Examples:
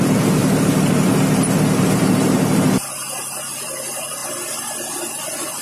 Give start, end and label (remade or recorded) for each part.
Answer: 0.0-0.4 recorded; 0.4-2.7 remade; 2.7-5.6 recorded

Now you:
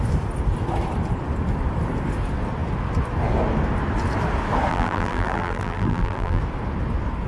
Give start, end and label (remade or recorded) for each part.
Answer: 0.0-4.7 recorded; 4.7-6.4 remade; 6.4-7.3 recorded